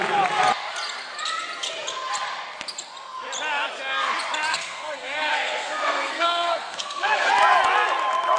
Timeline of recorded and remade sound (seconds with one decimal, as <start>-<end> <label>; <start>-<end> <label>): 0.0-4.5 recorded; 4.5-7.3 remade; 7.3-8.4 recorded